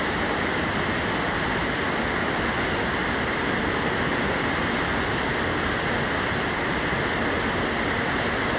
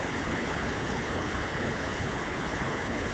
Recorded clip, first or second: first